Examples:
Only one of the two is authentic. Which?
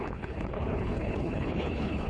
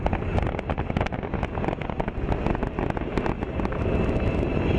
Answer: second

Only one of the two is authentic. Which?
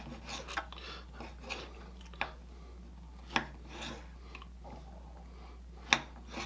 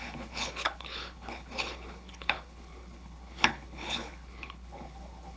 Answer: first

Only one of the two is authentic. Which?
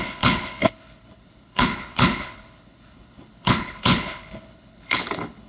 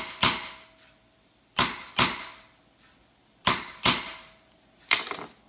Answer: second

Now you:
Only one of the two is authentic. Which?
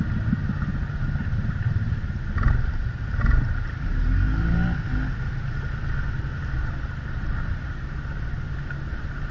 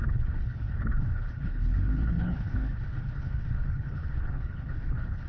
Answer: first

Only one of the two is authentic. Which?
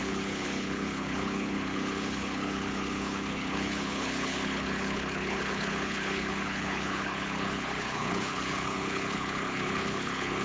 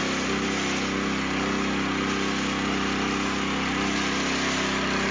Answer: second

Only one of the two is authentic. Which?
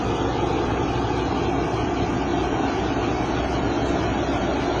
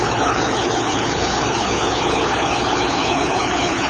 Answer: first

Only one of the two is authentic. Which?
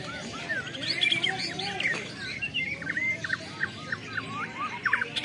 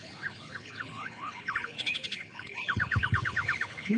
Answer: first